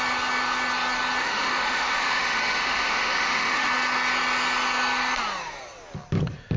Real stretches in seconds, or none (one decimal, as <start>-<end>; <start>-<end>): 0.0-1.2; 3.7-6.6